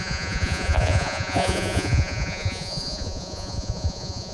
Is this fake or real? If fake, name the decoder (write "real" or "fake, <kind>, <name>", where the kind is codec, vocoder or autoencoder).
fake, vocoder, Vocos